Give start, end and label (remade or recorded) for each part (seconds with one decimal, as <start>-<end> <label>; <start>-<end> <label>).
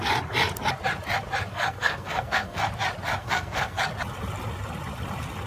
0.0-1.5 recorded; 1.5-2.6 remade; 2.6-3.2 recorded; 3.2-3.8 remade; 3.8-5.5 recorded